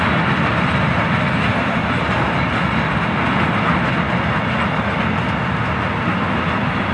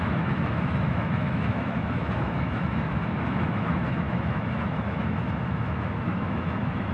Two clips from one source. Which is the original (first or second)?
first